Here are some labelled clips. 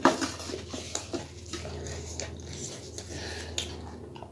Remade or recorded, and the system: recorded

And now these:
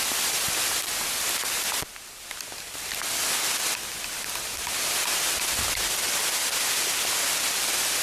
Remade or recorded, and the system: recorded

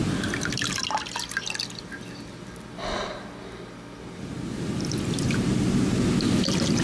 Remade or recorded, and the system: recorded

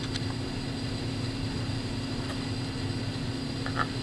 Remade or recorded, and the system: recorded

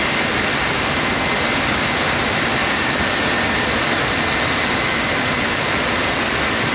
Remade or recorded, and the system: recorded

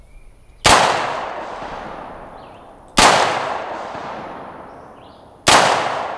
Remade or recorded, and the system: recorded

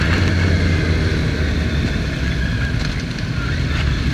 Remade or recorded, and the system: recorded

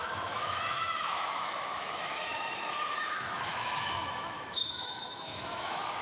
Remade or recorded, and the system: remade, autoencoder, DAC-VAE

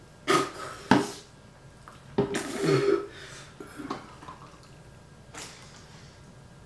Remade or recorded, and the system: recorded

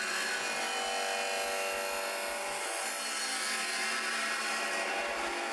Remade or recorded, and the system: recorded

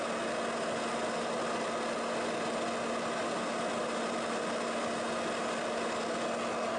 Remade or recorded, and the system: recorded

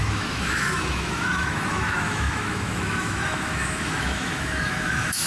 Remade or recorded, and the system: remade, autoencoder, DAC-VAE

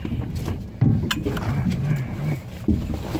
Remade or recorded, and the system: recorded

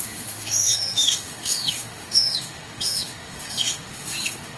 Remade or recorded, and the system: remade, autoencoder, DAC-VAE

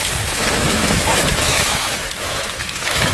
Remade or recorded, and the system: remade, autoencoder, DAC-VAE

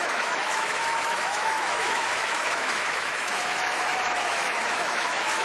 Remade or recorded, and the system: remade, autoencoder, DAC-VAE